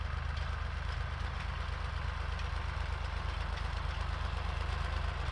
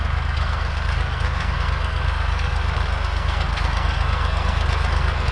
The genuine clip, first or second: first